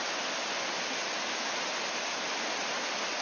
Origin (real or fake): real